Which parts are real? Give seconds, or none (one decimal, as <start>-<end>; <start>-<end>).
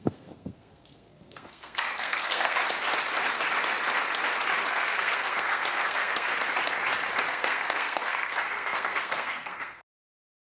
2.6-4.7; 6.3-7.3